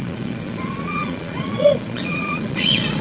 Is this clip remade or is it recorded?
remade